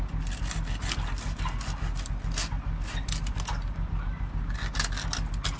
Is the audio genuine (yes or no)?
yes